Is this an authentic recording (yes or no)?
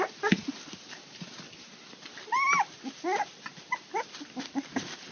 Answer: yes